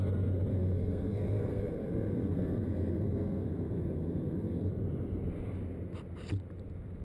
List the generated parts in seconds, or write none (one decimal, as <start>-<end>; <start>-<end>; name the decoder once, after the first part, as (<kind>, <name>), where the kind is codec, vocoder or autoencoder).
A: 0.5-4.7 (codec, SNAC)